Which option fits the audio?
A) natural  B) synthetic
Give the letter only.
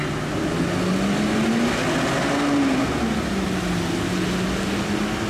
A